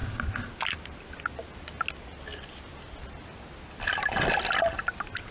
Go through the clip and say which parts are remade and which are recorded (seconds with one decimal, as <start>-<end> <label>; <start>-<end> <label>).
0.0-5.3 recorded